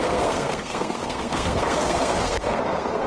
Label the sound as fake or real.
fake